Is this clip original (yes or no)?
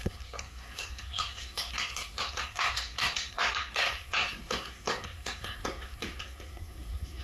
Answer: no